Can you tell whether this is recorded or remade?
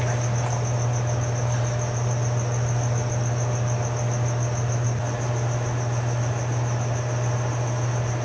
recorded